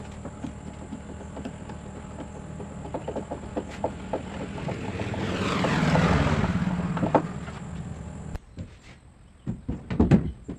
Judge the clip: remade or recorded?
recorded